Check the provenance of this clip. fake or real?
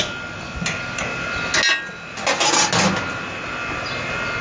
real